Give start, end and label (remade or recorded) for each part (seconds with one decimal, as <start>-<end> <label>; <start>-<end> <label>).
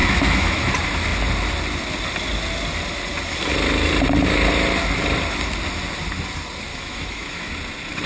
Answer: 0.0-0.7 remade; 0.7-6.7 recorded; 6.7-7.5 remade; 7.5-8.1 recorded